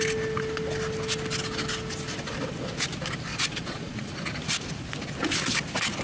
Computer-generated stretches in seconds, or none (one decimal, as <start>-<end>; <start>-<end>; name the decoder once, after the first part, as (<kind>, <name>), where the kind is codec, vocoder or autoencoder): 3.3-4.1 (vocoder, Vocos)